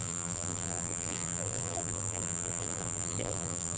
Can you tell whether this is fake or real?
fake